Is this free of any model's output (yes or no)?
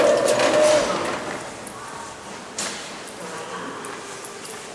yes